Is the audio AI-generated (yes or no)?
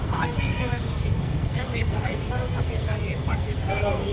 yes